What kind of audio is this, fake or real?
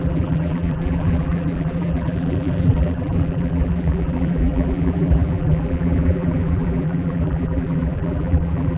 fake